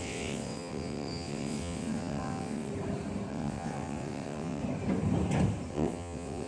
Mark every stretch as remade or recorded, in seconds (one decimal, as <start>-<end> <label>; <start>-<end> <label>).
0.0-2.7 remade; 2.7-3.3 recorded; 3.3-4.6 remade; 4.6-5.7 recorded; 5.7-6.5 remade